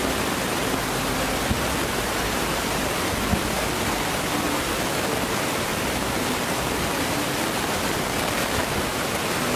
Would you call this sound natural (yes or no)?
yes